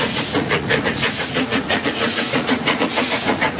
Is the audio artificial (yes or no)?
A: yes